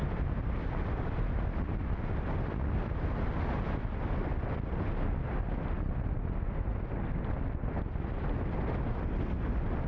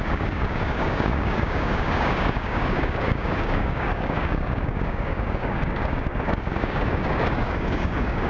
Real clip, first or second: first